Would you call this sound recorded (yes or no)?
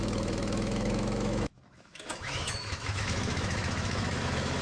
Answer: no